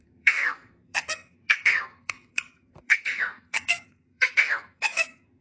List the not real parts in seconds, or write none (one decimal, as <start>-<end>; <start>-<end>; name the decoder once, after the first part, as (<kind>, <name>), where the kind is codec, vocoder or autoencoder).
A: 0.0-5.4 (codec, SNAC)